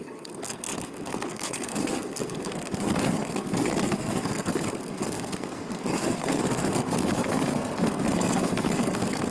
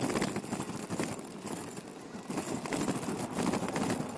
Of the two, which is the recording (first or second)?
second